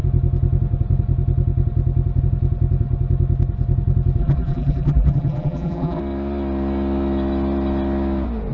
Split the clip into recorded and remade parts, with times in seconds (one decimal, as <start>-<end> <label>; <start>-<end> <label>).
0.0-4.2 recorded; 4.2-6.0 remade; 6.0-8.5 recorded